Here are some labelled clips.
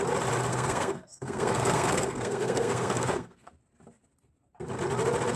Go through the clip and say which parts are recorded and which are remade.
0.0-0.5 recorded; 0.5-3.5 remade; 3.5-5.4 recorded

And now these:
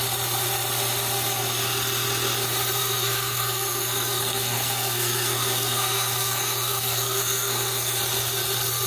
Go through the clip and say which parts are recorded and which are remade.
0.0-2.8 recorded; 2.8-8.0 remade; 8.0-8.9 recorded

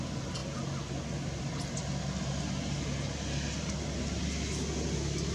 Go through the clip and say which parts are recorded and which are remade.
0.0-5.3 recorded